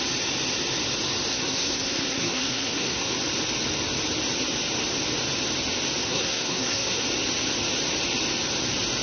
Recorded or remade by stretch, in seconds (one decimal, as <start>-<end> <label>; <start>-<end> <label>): 0.0-1.3 recorded; 1.3-3.1 remade; 3.1-6.0 recorded; 6.0-7.0 remade; 7.0-9.0 recorded